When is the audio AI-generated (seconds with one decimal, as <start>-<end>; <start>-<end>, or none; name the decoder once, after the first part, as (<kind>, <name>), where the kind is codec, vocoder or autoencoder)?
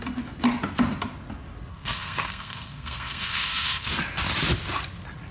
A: 1.7-3.9 (codec, SNAC)